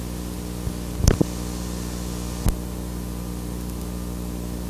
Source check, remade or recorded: recorded